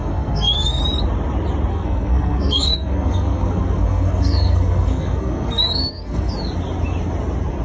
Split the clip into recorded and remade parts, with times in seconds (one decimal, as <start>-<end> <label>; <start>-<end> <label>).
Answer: 0.0-0.8 remade; 0.8-1.7 recorded; 1.7-6.3 remade; 6.3-7.6 recorded